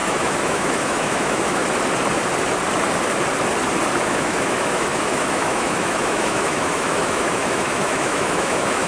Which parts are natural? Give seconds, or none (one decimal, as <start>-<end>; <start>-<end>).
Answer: 1.6-4.0